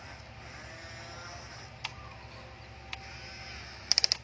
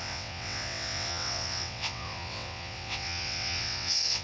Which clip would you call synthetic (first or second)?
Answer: second